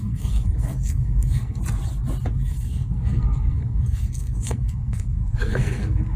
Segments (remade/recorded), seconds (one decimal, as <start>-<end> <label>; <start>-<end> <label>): 0.0-1.6 remade; 1.6-2.3 recorded; 2.3-6.2 remade